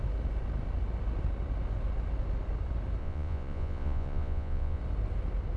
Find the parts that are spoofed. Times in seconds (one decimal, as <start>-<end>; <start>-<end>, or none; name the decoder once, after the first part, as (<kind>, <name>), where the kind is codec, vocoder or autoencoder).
3.0-4.8 (vocoder, Vocos)